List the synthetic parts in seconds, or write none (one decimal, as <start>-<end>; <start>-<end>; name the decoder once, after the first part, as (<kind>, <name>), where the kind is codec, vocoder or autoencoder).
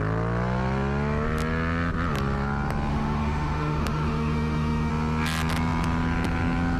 2.9-4.9 (autoencoder, DAC-VAE)